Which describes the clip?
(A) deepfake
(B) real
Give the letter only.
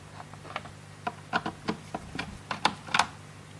B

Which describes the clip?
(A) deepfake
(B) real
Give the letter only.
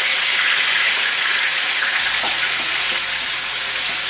A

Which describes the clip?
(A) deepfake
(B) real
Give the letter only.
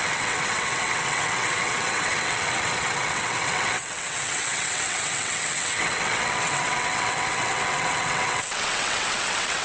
A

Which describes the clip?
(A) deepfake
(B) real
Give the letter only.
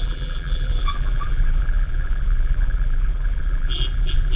A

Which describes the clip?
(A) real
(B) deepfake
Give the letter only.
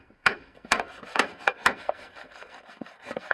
B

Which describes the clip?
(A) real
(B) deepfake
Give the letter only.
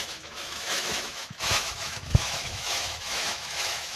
B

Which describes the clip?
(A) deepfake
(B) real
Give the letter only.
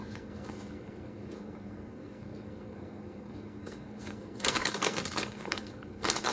A